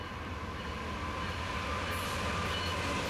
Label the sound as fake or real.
real